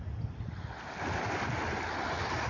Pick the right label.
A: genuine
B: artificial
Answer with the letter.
A